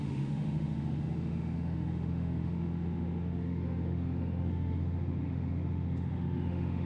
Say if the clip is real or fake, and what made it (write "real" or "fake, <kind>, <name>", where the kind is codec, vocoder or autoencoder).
fake, autoencoder, DAC-VAE